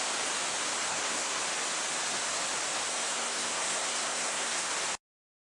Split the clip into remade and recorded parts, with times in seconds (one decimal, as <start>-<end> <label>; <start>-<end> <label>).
0.0-0.9 recorded; 0.9-1.4 remade; 1.4-2.9 recorded; 2.9-4.7 remade; 4.7-5.5 recorded